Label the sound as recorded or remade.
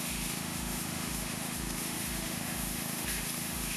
remade